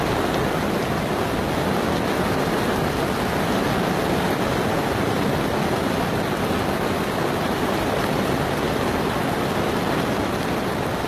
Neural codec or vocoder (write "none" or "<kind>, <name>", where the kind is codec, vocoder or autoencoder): none